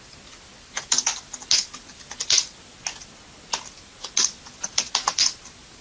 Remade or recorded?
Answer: recorded